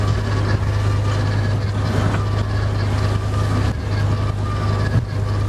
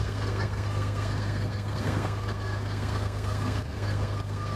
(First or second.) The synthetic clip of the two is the second